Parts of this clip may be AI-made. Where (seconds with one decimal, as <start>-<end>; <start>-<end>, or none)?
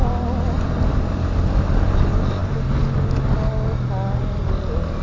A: none